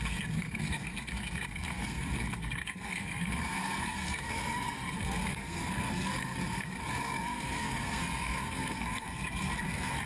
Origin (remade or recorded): remade